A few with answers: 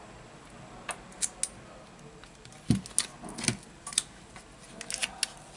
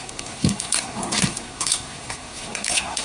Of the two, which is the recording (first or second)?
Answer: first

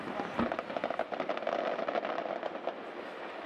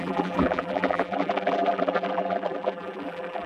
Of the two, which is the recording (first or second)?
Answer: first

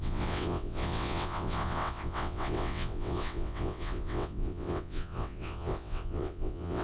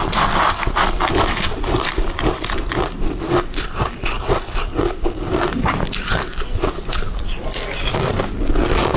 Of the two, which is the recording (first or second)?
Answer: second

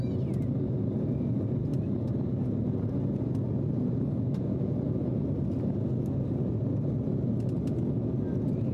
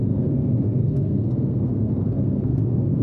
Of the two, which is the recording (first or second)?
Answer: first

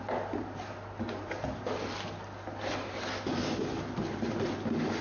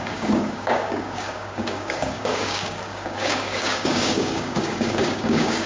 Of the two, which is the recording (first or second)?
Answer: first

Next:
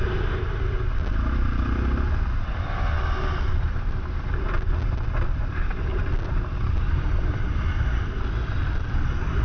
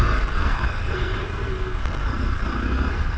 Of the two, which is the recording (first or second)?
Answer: first